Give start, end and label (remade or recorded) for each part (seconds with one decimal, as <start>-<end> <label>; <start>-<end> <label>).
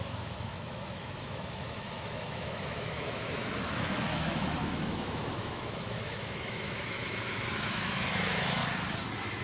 0.0-8.6 remade; 8.6-9.4 recorded